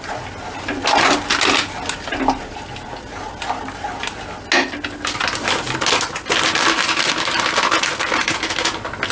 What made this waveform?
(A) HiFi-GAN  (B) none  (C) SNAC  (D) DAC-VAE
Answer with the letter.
B